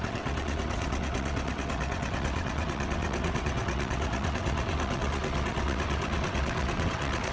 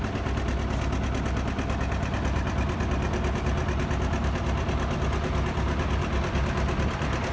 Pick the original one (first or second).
second